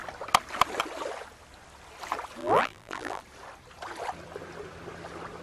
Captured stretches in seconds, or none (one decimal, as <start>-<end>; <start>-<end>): 0.0-2.4; 3.2-5.4